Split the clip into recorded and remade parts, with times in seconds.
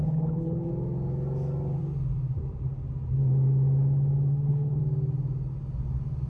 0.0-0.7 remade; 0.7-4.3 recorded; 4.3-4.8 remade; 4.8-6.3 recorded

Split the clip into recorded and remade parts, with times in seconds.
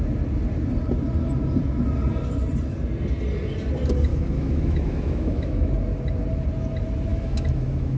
0.0-4.1 recorded; 4.1-5.7 remade; 5.7-7.1 recorded; 7.1-8.0 remade